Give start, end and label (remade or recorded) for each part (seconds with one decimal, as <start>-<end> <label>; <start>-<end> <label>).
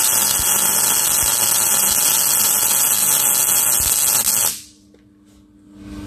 0.0-6.1 recorded